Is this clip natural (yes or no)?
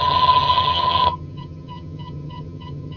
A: no